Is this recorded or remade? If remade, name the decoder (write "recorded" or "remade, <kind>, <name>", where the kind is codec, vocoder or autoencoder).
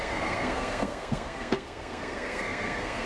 remade, codec, SNAC